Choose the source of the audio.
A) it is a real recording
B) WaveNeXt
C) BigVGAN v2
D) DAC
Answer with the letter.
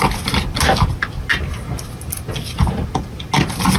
A